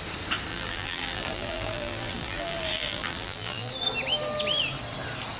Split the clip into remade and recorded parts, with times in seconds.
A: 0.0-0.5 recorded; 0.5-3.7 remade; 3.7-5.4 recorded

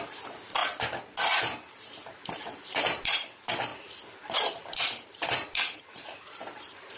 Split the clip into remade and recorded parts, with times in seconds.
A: 0.0-0.6 remade; 0.6-1.4 recorded; 1.4-7.0 remade

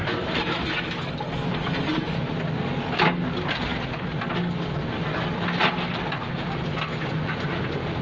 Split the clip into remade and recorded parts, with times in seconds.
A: 0.0-8.0 recorded

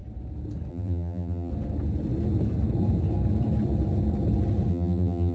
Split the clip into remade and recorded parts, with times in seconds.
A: 0.0-0.7 recorded; 0.7-1.5 remade; 1.5-4.7 recorded; 4.7-5.3 remade